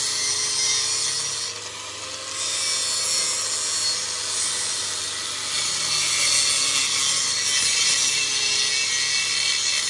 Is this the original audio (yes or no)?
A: yes